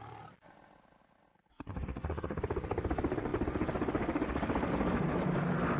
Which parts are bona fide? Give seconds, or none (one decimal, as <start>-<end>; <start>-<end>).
0.0-1.5; 2.4-5.8